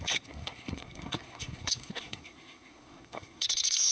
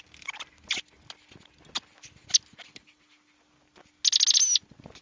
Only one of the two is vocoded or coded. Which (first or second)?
first